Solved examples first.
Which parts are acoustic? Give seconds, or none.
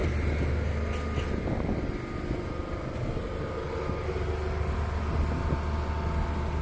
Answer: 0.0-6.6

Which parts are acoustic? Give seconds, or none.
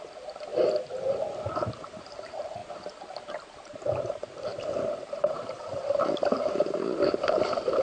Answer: 0.5-1.5; 2.6-3.4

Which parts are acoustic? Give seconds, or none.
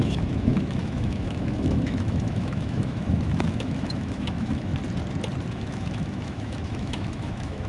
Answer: 4.7-5.5